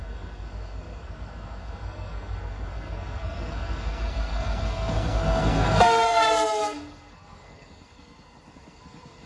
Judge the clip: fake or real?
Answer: fake